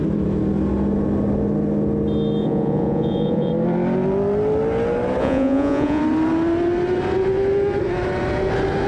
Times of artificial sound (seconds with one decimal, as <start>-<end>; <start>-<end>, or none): 2.4-3.5; 5.2-6.0

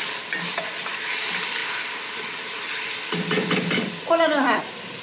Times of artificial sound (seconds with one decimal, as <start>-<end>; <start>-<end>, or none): none

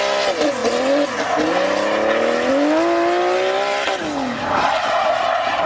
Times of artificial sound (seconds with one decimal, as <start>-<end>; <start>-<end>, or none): none

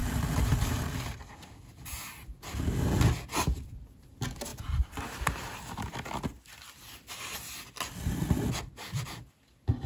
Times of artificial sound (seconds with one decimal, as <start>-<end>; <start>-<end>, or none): none

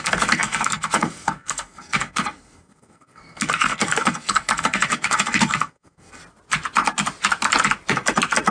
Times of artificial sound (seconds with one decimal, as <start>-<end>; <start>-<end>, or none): 0.0-6.2

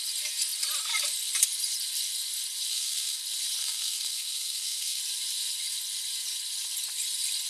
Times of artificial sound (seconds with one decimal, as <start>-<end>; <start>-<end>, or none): 2.7-3.2; 3.6-5.0

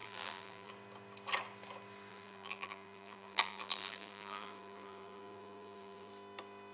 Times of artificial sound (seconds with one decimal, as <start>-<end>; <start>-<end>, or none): 0.0-0.7; 2.1-6.1

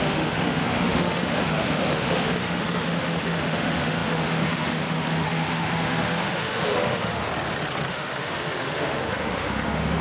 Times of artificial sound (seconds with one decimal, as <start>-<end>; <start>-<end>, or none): 0.0-7.3; 7.9-10.0